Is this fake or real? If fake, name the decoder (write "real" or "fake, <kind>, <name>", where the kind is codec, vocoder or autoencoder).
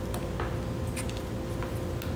real